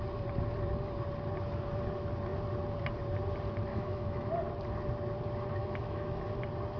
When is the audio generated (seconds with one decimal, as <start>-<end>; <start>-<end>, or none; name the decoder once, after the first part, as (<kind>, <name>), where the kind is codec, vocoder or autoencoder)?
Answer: 3.7-4.3 (autoencoder, DAC-VAE); 5.6-6.3